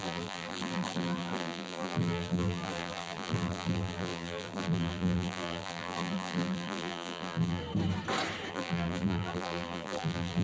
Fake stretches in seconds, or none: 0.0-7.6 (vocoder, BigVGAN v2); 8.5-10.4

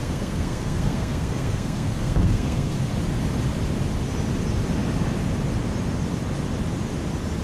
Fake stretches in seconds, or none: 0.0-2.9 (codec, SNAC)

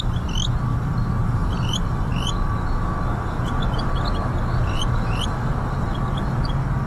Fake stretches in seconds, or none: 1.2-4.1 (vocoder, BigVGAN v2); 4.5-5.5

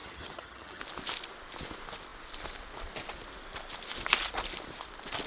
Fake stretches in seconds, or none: 0.0-0.8 (vocoder, HiFi-GAN)

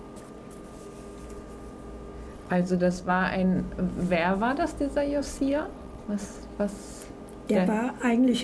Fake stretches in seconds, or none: 2.3-3.1 (vocoder, WaveNeXt); 5.2-6.4

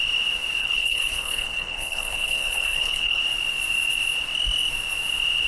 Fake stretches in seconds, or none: 0.6-3.2 (codec, HILCodec)